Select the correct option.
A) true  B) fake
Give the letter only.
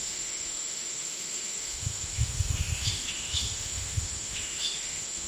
B